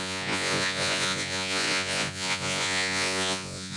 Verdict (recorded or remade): remade